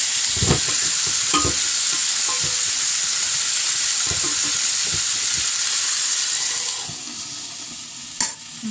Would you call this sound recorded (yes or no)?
yes